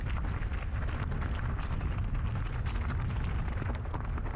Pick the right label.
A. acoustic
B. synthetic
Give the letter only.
A